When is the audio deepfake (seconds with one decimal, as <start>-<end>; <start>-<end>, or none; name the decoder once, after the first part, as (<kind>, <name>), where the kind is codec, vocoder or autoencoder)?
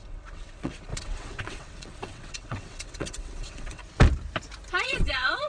0.0-3.8 (vocoder, WaveNeXt); 4.7-5.5